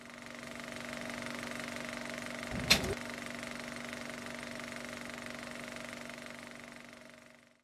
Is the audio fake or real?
real